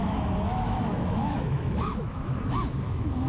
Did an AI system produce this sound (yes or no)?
yes